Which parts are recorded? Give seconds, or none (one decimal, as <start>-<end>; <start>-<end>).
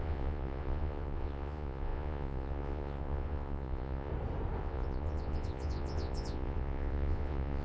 4.1-4.6